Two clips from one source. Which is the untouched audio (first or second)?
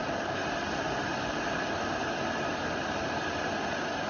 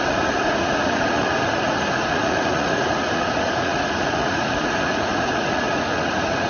first